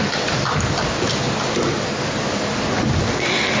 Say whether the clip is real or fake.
real